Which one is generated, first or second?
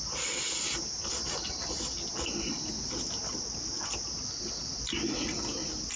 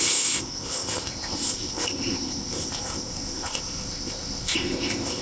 second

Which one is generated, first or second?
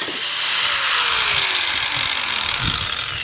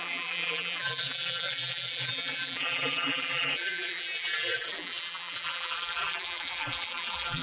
second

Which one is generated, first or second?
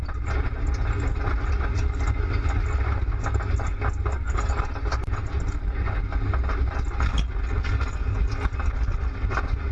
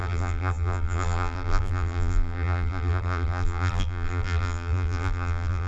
second